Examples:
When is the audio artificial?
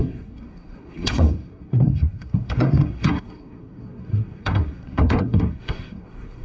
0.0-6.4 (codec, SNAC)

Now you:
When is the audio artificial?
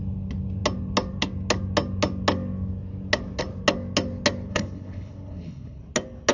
4.5-5.8 (codec, HILCodec)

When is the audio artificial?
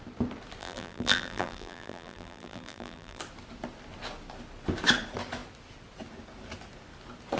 0.6-3.2 (vocoder, BigVGAN v2)